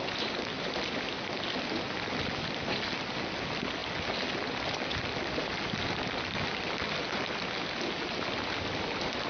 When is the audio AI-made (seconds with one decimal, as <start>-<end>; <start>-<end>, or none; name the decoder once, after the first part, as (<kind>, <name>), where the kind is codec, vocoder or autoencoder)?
none